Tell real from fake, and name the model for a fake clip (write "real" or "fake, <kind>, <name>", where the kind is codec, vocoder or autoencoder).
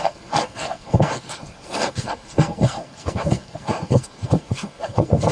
fake, codec, SNAC